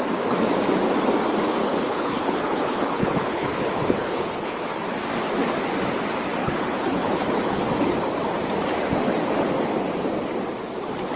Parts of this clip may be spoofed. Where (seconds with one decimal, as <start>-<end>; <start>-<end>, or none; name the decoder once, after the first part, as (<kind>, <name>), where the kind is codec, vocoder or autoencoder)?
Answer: 1.6-4.7 (codec, HILCodec); 6.4-7.6